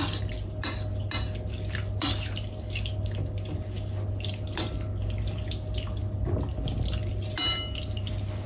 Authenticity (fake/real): real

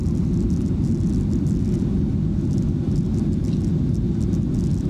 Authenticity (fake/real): real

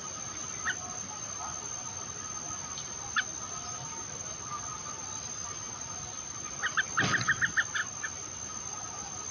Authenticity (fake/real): real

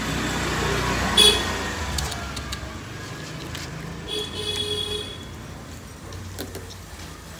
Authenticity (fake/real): real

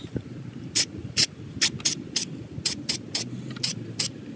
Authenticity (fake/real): real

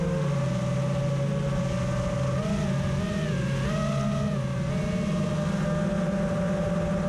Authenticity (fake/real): real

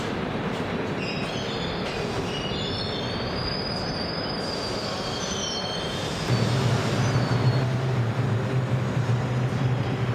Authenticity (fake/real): real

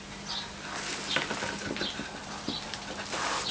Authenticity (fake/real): real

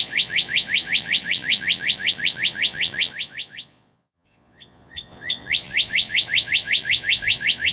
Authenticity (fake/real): fake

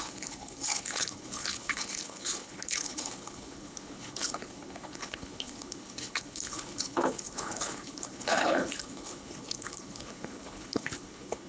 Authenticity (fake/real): fake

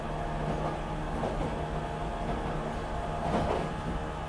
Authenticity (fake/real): real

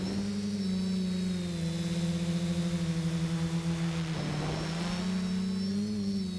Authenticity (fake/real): real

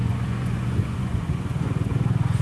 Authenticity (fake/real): fake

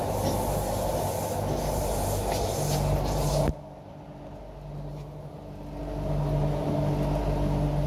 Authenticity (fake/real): real